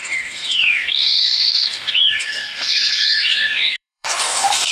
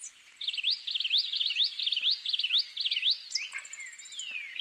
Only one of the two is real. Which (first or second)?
second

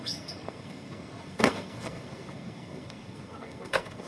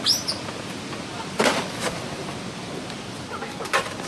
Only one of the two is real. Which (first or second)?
second